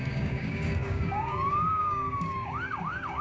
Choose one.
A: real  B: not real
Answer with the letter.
B